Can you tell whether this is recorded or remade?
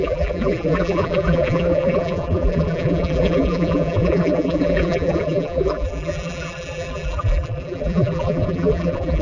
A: remade